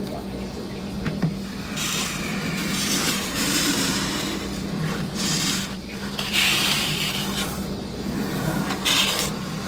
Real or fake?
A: fake